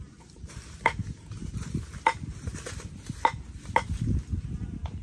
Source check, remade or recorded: recorded